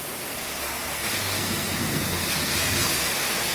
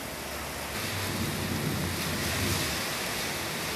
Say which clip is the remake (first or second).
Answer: first